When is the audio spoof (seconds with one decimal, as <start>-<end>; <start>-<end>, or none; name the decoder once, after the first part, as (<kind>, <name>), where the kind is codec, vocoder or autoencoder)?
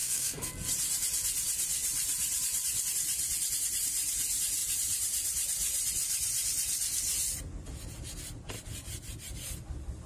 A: 0.0-0.5 (codec, SNAC)